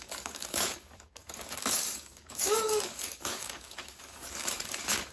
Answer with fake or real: fake